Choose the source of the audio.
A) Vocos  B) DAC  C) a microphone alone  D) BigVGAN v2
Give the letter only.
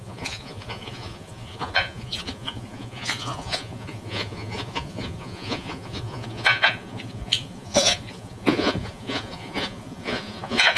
A